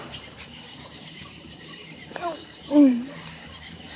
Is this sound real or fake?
fake